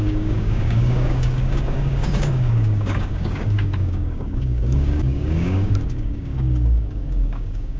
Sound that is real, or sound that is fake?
fake